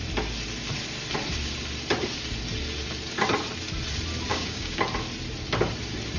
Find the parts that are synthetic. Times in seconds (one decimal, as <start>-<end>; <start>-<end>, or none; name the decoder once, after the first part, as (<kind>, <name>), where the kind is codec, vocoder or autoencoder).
4.3-4.8 (codec, DAC)